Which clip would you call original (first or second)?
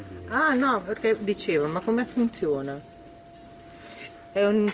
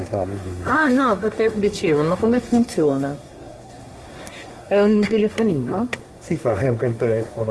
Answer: first